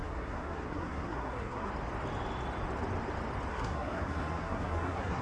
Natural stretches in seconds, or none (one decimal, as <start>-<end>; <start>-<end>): 1.7-3.5